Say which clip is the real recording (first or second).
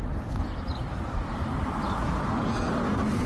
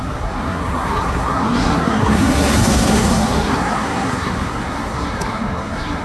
first